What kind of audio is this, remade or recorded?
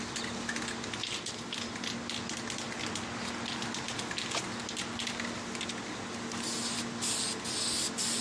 recorded